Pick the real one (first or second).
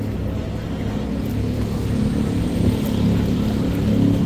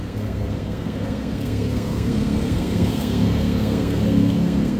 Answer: first